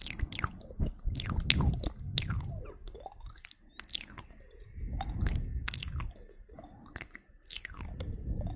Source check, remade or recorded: recorded